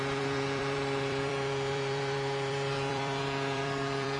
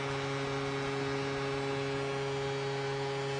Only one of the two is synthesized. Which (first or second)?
first